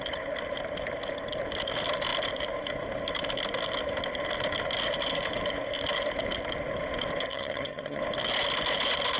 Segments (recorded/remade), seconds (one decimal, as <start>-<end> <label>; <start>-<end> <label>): 0.0-7.3 recorded; 7.3-8.0 remade; 8.0-9.2 recorded